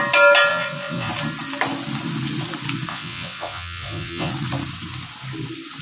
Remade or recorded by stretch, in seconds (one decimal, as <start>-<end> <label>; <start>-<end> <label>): 0.0-0.5 recorded; 0.5-1.1 remade; 1.1-2.9 recorded; 2.9-4.3 remade; 4.3-5.8 recorded